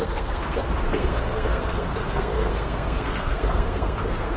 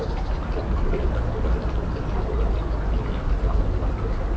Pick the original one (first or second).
second